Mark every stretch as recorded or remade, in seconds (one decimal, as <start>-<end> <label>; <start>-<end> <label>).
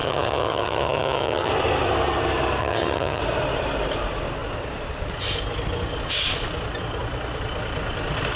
0.0-1.5 remade; 1.5-2.6 recorded; 2.6-3.2 remade; 3.2-8.4 recorded